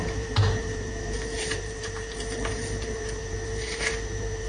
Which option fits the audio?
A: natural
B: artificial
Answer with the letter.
B